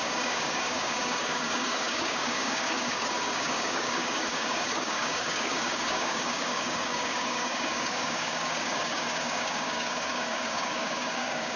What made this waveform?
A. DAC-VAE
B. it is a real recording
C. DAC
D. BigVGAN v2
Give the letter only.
C